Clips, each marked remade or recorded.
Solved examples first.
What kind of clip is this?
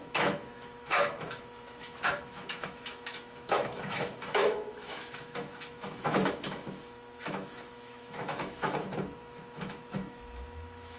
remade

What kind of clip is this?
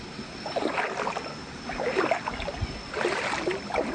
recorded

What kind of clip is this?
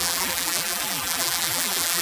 remade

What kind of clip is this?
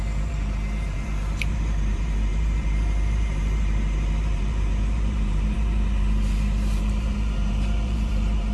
remade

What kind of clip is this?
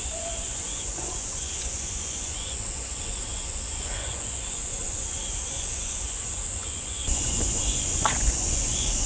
remade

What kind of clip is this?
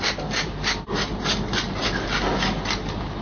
recorded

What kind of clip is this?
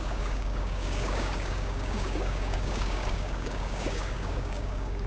remade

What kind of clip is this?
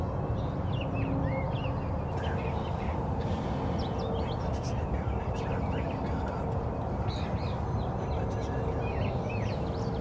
recorded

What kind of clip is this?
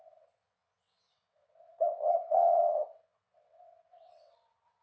remade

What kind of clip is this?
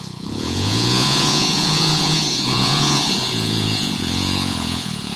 remade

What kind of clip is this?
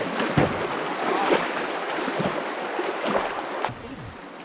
recorded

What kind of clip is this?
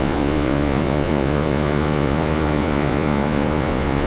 remade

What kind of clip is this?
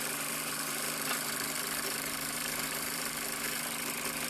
remade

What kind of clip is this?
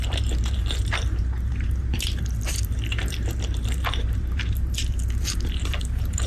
remade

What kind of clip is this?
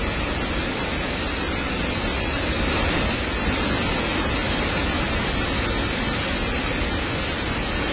recorded